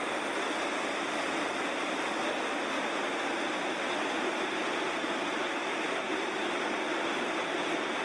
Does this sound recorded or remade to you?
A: remade